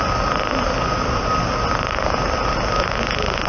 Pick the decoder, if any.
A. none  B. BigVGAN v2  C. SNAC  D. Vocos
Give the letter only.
A